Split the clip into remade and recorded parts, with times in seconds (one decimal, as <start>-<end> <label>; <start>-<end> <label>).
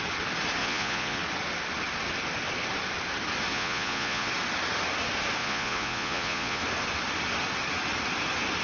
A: 0.0-0.6 recorded; 0.6-1.2 remade; 1.2-3.5 recorded; 3.5-4.3 remade; 4.3-5.4 recorded; 5.4-6.6 remade; 6.6-8.6 recorded